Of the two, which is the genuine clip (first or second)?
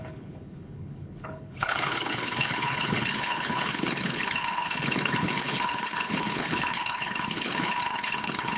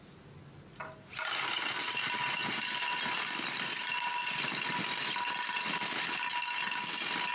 second